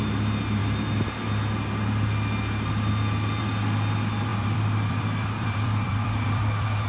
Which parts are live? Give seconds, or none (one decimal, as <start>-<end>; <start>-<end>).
0.0-4.3